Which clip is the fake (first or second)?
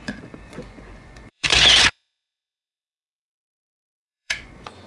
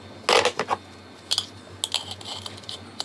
first